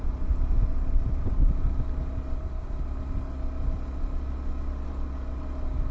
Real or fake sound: real